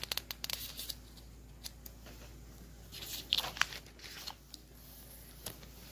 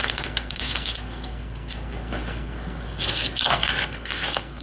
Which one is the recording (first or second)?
first